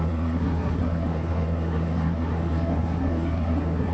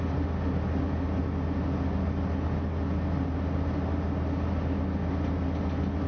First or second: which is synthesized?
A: first